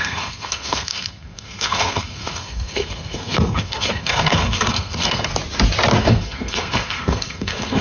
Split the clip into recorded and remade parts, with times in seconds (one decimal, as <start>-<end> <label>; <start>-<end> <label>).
0.0-5.3 remade; 5.3-6.0 recorded; 6.0-7.8 remade